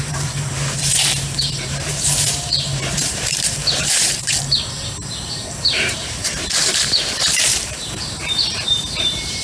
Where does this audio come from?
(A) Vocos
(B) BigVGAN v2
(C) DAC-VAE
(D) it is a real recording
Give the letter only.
B